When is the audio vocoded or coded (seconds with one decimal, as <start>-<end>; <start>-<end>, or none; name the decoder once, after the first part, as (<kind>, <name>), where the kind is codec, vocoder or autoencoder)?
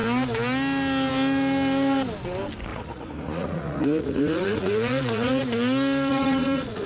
2.7-5.4 (vocoder, Vocos); 6.1-6.9